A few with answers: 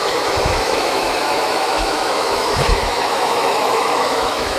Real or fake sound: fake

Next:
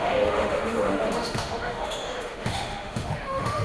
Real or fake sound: fake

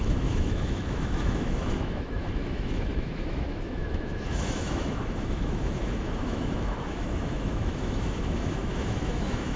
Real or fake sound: fake